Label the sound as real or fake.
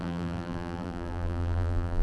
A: fake